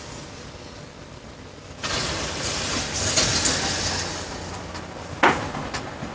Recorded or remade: recorded